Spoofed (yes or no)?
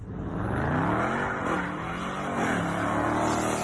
no